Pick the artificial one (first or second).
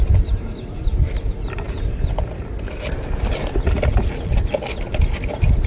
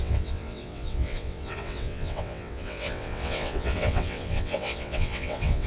second